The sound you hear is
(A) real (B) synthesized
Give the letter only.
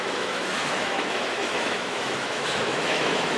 B